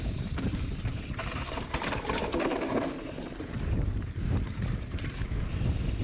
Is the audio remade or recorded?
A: remade